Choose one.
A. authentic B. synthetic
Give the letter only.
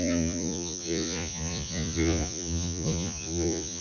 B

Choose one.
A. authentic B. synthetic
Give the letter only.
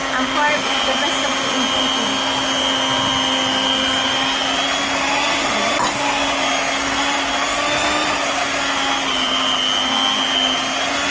A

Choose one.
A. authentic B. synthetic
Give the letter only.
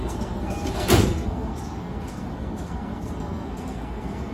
B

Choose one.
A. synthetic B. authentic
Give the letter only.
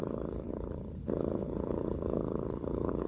A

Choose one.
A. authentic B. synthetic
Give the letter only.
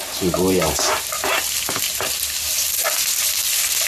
A